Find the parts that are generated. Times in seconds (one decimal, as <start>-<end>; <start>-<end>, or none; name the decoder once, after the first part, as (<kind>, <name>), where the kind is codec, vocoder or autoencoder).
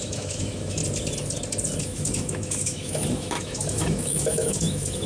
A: 0.0-0.8 (autoencoder, DAC-VAE); 1.8-5.1